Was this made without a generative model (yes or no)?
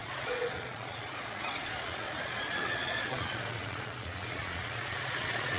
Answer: no